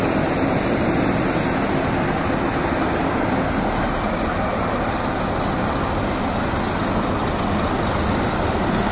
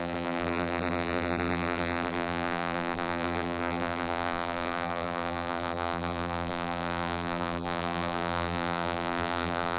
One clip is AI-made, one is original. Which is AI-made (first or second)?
second